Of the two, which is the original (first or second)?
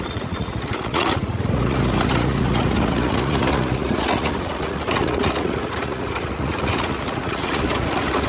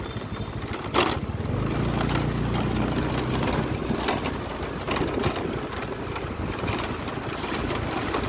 second